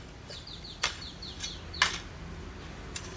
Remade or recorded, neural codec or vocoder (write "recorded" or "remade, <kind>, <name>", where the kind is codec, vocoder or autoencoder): recorded